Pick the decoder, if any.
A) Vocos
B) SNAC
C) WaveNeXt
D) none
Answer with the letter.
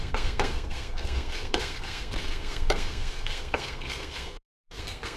B